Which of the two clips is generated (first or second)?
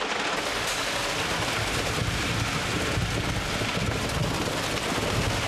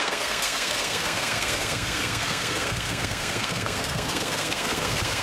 second